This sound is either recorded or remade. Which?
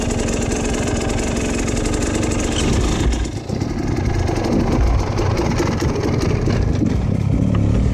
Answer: recorded